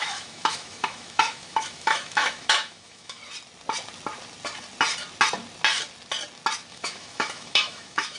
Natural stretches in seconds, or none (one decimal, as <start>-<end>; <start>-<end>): 3.2-6.7